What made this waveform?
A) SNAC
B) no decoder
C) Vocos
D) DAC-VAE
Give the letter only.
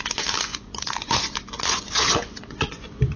C